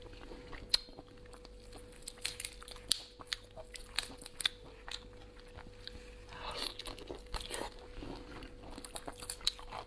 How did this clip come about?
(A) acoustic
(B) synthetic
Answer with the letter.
A